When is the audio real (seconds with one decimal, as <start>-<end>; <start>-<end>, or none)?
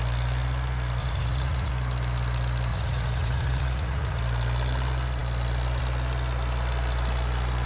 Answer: 0.0-1.0; 1.7-2.7; 4.2-7.7